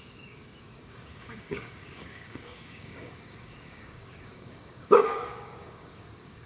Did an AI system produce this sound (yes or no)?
yes